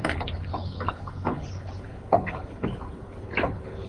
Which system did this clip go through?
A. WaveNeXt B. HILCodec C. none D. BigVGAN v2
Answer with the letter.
B